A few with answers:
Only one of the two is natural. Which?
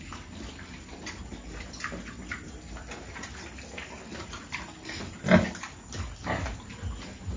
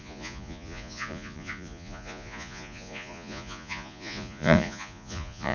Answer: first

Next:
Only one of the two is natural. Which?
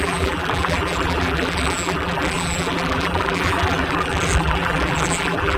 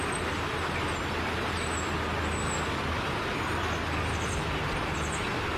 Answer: second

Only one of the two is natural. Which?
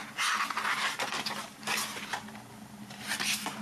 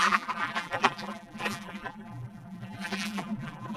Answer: first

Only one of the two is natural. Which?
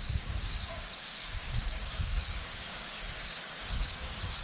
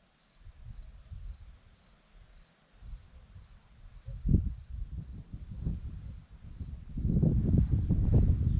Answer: second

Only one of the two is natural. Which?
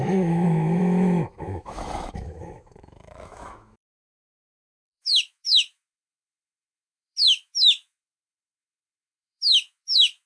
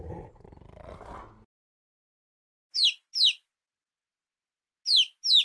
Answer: second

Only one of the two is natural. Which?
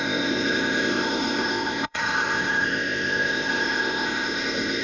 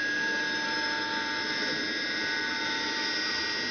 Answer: second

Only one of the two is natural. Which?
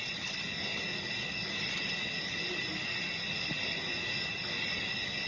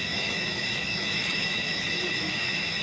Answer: first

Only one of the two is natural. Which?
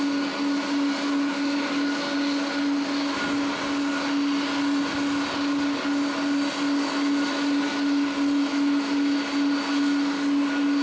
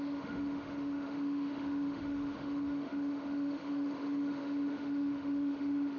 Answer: first